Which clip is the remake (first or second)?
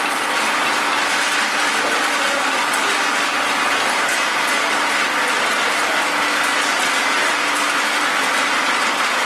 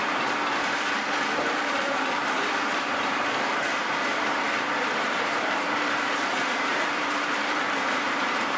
second